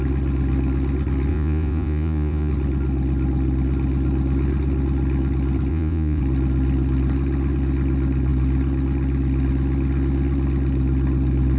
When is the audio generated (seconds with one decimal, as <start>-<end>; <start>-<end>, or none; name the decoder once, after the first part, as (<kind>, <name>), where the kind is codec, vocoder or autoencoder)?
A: 1.3-2.5 (vocoder, Vocos); 5.7-6.2